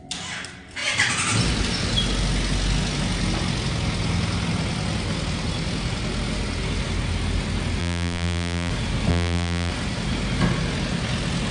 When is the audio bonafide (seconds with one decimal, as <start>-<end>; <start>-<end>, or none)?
0.0-7.8; 8.7-9.1; 9.7-11.5